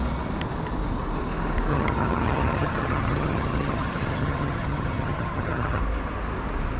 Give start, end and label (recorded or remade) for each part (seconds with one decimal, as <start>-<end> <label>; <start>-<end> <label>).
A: 0.0-1.7 recorded; 1.7-5.8 remade; 5.8-6.8 recorded